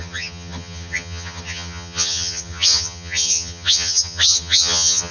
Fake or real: fake